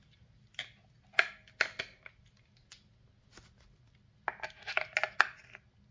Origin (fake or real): real